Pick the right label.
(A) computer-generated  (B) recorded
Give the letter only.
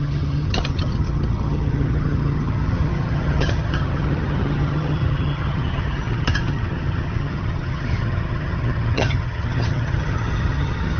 A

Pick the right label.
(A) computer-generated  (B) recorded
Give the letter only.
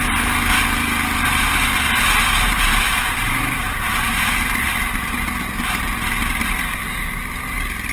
B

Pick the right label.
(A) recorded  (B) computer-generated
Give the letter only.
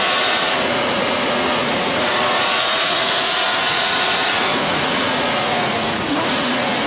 B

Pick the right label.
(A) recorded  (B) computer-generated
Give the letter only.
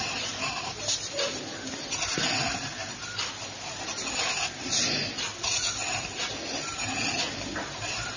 A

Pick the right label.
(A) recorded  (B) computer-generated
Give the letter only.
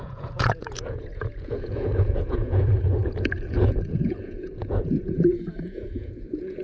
B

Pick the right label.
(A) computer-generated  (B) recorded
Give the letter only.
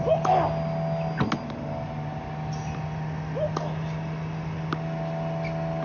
B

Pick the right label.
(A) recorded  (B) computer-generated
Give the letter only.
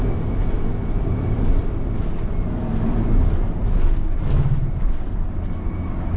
A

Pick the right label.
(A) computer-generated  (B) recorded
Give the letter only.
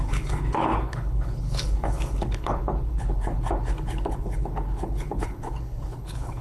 A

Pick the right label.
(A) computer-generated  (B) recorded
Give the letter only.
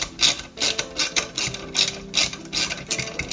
B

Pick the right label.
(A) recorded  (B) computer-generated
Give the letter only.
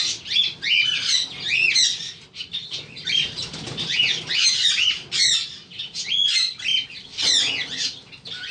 A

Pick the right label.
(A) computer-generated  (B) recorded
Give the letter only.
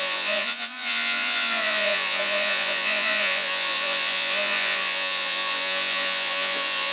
A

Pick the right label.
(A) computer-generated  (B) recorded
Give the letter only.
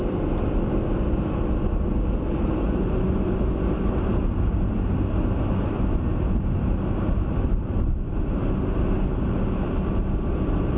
B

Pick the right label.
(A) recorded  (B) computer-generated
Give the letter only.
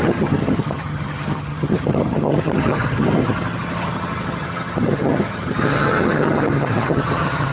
B